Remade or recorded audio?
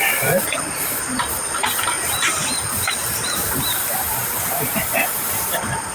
remade